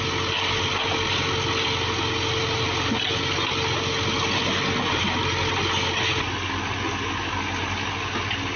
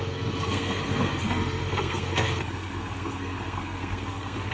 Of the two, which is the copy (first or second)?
second